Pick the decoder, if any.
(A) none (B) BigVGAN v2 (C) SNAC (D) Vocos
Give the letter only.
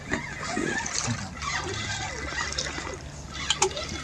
A